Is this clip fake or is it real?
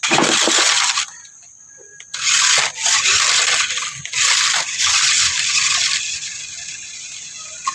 real